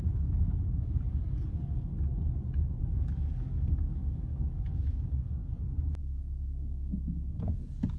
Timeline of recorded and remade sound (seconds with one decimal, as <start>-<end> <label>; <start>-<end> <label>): 0.0-0.4 remade; 0.4-1.1 recorded; 1.1-1.9 remade; 1.9-2.8 recorded; 2.8-5.4 remade; 5.4-6.0 recorded; 6.0-8.0 remade